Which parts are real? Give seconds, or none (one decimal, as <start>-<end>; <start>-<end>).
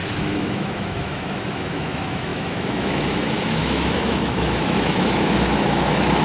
none